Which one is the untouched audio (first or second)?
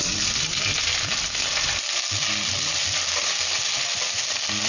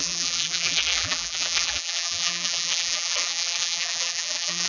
first